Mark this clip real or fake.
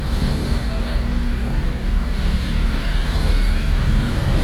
fake